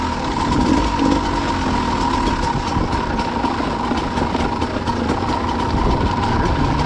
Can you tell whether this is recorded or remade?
recorded